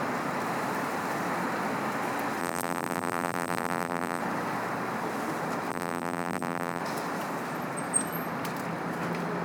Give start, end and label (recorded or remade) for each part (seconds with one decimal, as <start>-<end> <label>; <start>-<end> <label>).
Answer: 0.0-2.4 recorded; 2.4-4.2 remade; 4.2-5.7 recorded; 5.7-6.8 remade; 6.8-9.4 recorded